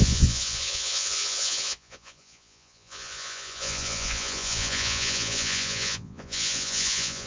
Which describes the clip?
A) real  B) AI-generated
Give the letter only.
B